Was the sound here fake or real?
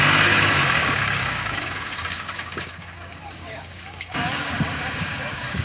fake